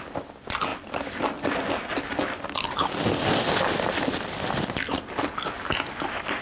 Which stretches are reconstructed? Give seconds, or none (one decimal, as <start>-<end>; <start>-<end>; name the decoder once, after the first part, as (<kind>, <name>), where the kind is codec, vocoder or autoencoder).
none